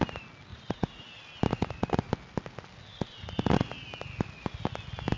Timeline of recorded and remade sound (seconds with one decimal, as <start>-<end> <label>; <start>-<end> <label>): 0.0-0.5 recorded; 0.5-1.1 remade; 1.1-1.5 recorded; 1.5-2.1 remade; 2.1-2.9 recorded; 2.9-3.7 remade; 3.7-5.2 recorded